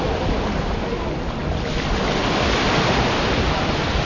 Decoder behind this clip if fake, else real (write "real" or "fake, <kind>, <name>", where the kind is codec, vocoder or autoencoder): real